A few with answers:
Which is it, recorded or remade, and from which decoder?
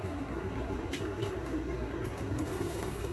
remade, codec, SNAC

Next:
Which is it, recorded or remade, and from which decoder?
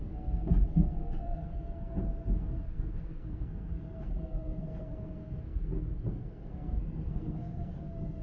remade, codec, SNAC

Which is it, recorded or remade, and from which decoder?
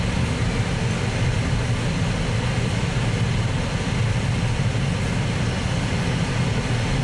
recorded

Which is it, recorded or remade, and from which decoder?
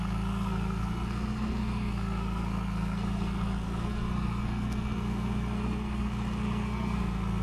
remade, codec, SNAC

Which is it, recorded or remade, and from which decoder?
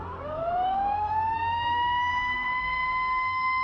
remade, codec, SNAC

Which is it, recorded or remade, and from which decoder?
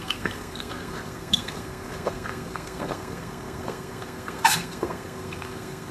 remade, codec, SNAC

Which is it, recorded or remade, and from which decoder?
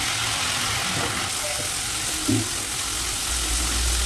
recorded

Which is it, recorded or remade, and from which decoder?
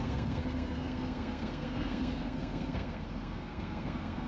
remade, codec, SNAC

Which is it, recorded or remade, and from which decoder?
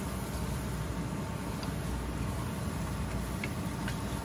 recorded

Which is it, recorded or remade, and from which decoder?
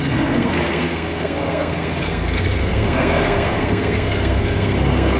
remade, codec, SNAC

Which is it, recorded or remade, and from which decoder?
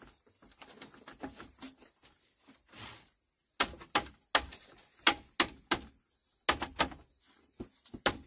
recorded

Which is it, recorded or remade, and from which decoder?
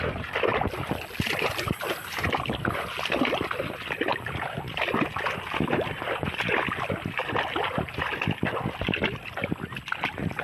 recorded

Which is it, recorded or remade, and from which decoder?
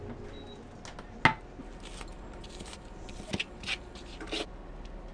recorded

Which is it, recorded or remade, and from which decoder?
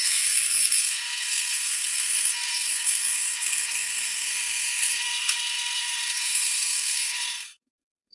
remade, codec, SNAC